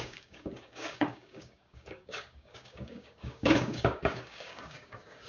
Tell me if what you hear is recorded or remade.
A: remade